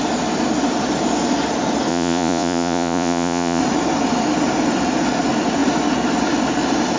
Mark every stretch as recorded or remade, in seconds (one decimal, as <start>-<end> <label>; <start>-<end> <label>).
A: 0.0-1.9 recorded; 1.9-3.6 remade; 3.6-7.0 recorded